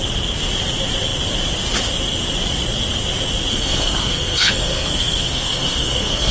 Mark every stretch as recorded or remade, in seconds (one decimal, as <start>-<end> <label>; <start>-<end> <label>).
0.0-3.5 recorded; 3.5-6.3 remade